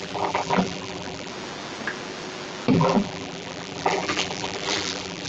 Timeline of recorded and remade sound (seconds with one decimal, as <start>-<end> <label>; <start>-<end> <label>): 0.0-1.3 remade; 1.3-2.7 recorded; 2.7-5.3 remade